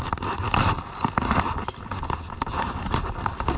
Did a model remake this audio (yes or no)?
no